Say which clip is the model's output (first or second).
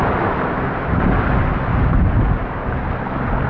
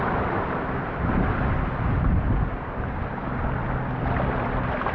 second